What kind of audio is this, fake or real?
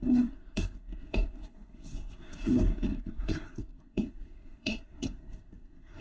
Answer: fake